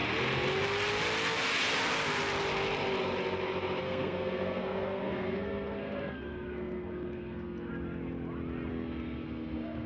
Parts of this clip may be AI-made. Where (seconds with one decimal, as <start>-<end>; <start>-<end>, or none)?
3.8-7.7; 8.7-9.9